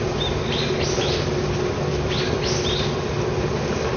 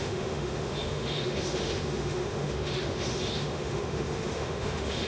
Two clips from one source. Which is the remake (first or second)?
second